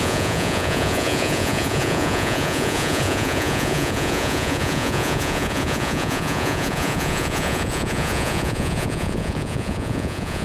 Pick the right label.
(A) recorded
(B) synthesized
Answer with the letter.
B